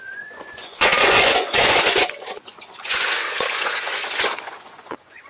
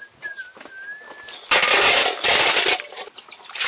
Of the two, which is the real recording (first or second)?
second